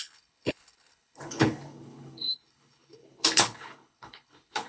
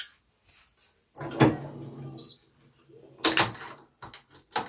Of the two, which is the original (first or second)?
second